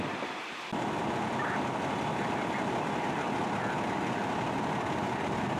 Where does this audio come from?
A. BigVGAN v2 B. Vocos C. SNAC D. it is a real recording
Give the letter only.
D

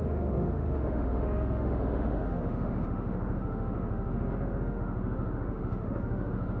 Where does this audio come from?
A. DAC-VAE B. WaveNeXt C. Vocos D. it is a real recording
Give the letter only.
A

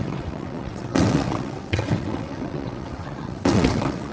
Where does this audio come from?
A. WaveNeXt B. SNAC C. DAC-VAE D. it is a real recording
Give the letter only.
A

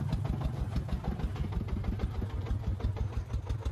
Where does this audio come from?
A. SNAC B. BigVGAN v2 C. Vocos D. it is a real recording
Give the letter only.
D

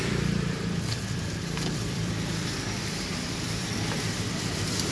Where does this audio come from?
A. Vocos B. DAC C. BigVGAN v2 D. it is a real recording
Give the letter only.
C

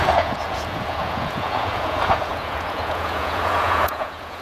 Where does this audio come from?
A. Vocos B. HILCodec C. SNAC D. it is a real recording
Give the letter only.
A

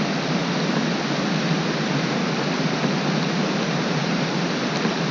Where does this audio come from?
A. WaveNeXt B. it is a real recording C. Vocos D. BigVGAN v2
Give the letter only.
B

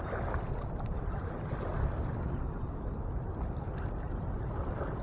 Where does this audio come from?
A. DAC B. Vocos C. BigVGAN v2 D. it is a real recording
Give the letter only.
D